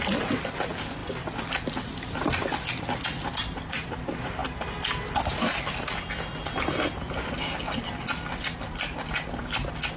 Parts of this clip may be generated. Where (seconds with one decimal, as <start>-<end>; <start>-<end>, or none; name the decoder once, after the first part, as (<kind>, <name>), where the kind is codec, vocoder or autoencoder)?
none